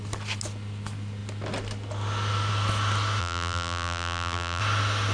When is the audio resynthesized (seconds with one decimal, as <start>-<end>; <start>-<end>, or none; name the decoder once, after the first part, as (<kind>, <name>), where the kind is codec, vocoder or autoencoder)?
3.2-4.6 (vocoder, BigVGAN v2)